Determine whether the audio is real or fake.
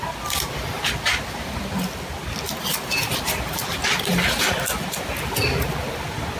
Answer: real